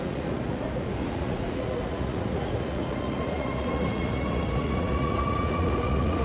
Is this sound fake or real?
fake